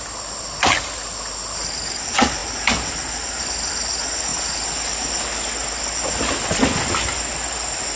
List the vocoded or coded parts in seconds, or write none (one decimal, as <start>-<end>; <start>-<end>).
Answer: 6.6-7.3